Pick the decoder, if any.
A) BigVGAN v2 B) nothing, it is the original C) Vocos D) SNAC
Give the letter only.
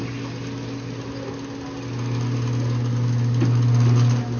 B